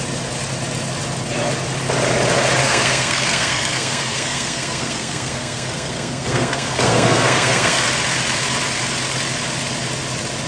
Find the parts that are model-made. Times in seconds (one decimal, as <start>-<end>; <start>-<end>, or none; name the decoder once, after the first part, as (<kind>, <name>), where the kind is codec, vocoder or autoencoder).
2.6-7.9 (codec, SNAC)